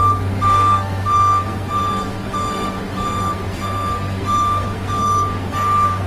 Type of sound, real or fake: fake